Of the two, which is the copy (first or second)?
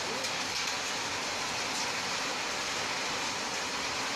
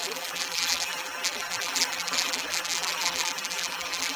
second